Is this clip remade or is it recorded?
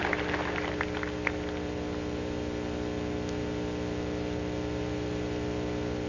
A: recorded